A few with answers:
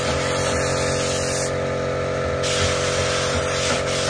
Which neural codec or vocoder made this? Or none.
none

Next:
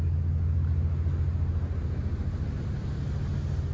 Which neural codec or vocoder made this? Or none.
none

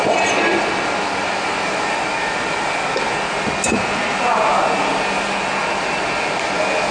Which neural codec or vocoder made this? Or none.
none